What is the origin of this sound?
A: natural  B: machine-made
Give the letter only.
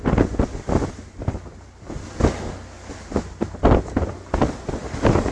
A